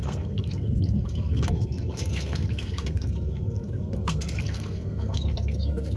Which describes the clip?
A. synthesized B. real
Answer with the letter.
A